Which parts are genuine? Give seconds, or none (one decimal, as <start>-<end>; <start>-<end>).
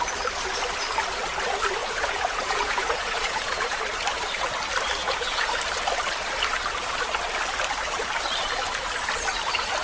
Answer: 0.0-1.8; 3.8-5.0; 5.5-9.8